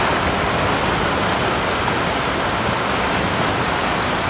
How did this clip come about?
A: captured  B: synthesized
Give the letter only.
A